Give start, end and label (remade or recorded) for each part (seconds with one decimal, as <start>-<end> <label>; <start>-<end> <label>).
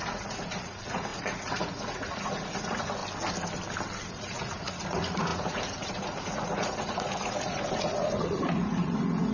0.0-3.0 remade; 3.0-4.1 recorded; 4.1-9.3 remade